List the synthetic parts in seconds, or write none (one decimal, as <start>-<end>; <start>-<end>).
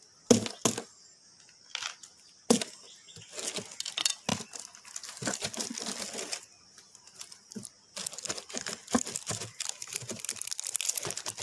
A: none